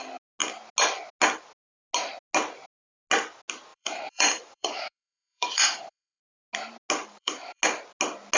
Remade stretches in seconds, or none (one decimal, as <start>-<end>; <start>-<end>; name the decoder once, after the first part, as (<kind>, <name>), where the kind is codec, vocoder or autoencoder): 3.7-6.2 (vocoder, BigVGAN v2); 7.0-7.6